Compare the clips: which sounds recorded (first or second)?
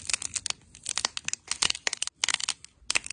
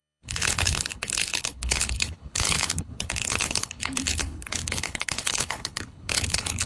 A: first